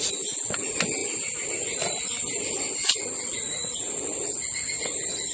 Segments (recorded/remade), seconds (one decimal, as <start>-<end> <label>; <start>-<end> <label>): 0.0-1.0 recorded; 1.0-1.5 remade; 1.5-5.3 recorded